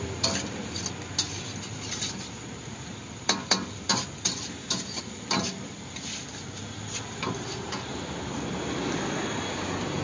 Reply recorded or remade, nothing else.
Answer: recorded